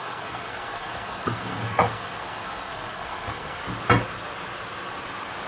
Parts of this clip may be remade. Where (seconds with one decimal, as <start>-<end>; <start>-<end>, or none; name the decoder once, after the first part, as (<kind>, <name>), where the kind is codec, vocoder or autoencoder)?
0.0-3.6 (codec, SNAC)